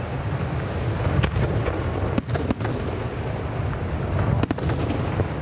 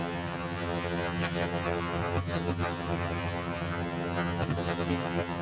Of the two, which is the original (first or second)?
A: first